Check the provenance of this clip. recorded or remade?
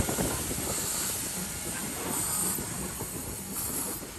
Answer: recorded